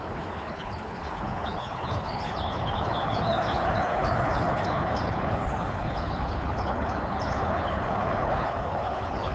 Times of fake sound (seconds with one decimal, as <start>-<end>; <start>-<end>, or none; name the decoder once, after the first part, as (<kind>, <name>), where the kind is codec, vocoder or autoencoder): 0.0-9.3 (codec, HILCodec)